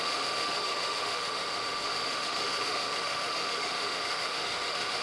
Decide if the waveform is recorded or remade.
remade